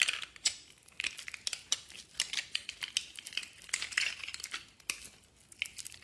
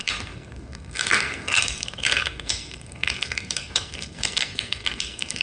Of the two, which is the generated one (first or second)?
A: second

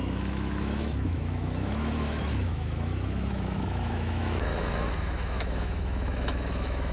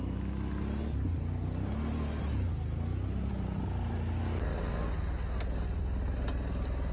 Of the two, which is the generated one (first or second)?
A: first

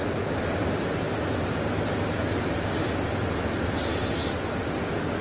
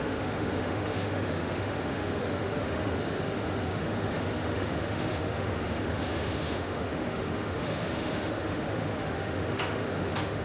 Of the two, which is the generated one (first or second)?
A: second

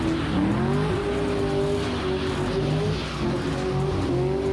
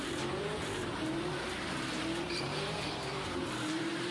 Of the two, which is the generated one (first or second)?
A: second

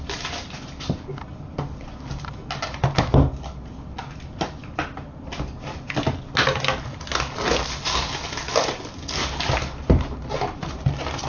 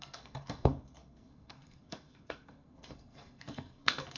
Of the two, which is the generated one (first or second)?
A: second